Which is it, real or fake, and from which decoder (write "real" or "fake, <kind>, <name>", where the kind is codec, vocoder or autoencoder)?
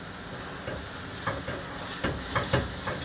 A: real